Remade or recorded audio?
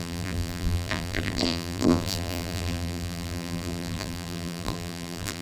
remade